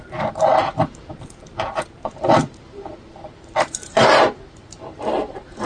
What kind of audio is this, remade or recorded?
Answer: remade